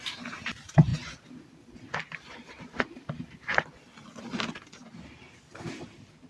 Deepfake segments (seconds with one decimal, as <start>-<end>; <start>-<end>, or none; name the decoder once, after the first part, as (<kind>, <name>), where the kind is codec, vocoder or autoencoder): 0.0-0.9 (vocoder, BigVGAN v2); 2.2-3.5; 5.7-6.3